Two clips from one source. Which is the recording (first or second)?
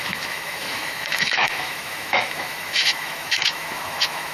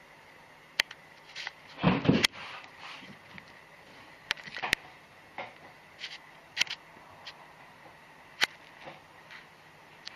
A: second